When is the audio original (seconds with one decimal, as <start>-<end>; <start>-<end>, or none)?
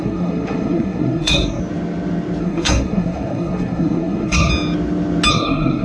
1.6-2.4; 4.5-5.3